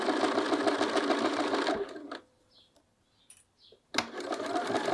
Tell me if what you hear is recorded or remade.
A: recorded